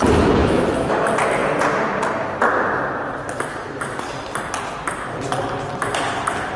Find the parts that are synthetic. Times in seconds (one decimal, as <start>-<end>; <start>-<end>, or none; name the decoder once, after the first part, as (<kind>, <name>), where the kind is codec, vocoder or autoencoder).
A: 0.4-0.9 (autoencoder, DAC-VAE)